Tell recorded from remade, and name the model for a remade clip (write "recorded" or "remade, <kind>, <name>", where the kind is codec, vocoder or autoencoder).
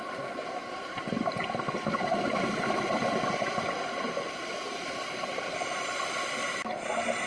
remade, vocoder, BigVGAN v2